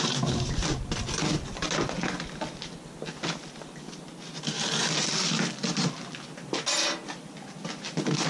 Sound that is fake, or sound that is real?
real